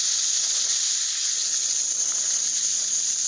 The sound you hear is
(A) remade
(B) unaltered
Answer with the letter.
B